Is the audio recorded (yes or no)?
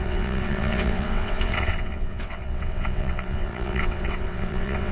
no